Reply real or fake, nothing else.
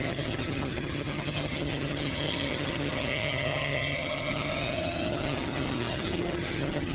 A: fake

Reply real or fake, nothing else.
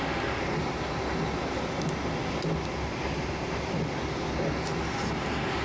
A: real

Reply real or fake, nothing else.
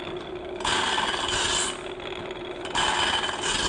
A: real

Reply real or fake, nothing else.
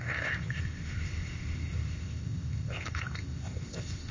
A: fake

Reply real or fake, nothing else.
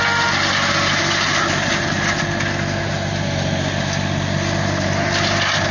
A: real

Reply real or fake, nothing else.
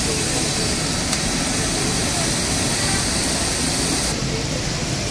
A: real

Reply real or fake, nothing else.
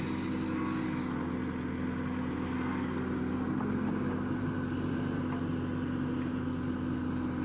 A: real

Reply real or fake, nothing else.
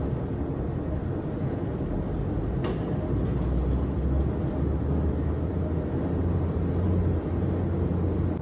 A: real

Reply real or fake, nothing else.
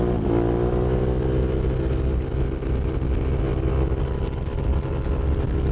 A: real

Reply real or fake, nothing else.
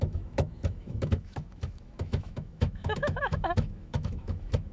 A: fake